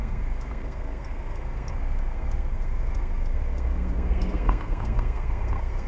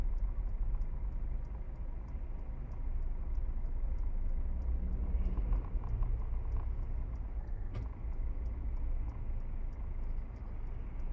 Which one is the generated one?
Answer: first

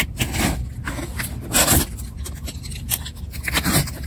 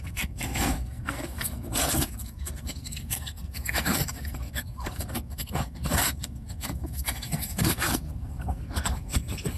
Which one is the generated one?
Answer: second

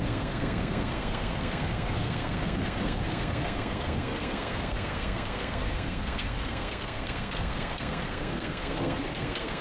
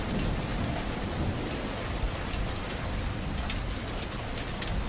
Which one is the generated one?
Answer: first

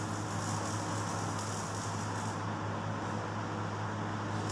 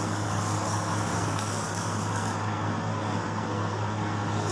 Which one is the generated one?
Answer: second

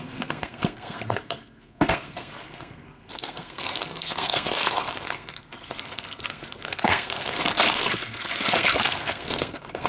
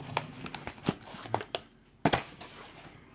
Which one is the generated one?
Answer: first